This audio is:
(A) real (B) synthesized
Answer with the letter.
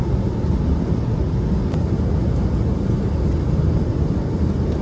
A